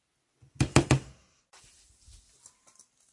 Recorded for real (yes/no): yes